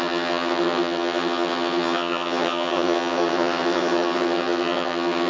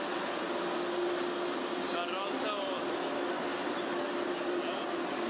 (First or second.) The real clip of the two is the second